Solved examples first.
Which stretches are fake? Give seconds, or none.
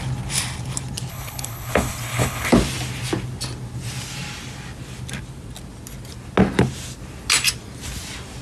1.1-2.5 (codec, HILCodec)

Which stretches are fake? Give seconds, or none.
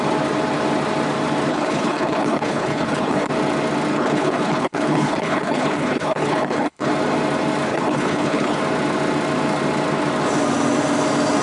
1.5-3.3 (codec, HILCodec); 3.9-6.9; 7.7-8.6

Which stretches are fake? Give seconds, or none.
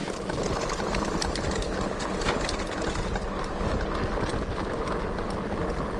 none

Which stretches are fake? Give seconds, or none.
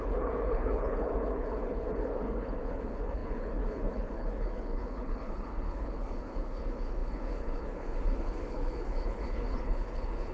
0.0-10.3 (codec, HILCodec)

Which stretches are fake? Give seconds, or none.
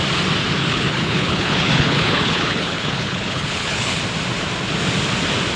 0.6-4.0 (codec, HILCodec)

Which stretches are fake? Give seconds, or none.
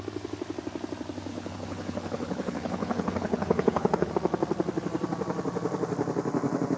1.3-4.1 (codec, HILCodec)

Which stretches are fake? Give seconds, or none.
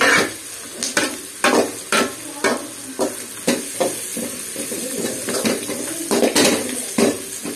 none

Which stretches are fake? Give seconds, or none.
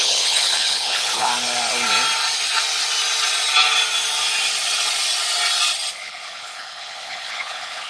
0.0-1.3 (codec, HILCodec); 5.9-7.9